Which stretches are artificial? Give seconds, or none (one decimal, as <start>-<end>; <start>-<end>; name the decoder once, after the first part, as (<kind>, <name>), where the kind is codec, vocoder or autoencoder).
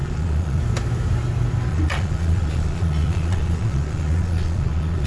0.0-0.6 (vocoder, Vocos); 1.7-5.1